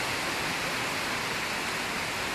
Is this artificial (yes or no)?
no